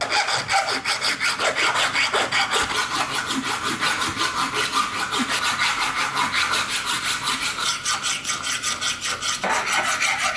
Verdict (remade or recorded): recorded